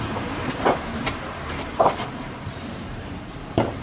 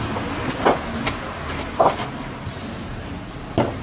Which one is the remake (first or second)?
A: first